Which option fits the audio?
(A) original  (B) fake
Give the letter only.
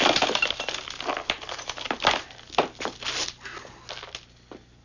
A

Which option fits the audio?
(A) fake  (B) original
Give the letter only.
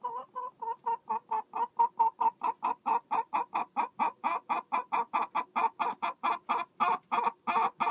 B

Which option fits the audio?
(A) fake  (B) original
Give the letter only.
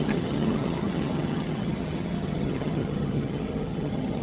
A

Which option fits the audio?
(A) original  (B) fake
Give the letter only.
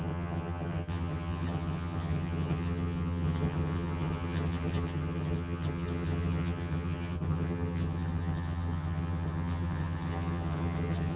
B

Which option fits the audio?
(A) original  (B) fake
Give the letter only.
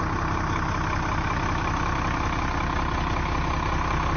A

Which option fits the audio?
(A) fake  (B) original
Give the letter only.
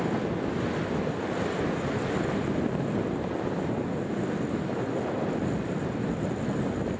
B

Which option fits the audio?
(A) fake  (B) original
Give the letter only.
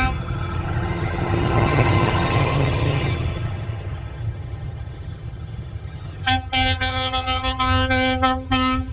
A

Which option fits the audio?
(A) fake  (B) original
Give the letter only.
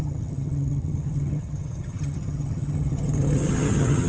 A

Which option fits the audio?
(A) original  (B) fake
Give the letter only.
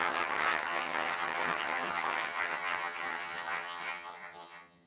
B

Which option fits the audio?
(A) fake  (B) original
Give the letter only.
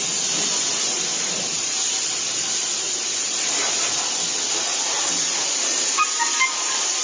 B